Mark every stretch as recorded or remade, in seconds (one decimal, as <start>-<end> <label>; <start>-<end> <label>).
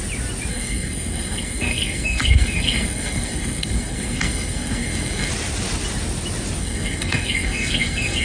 0.0-0.5 recorded; 0.5-5.3 remade; 5.3-6.6 recorded; 6.6-8.2 remade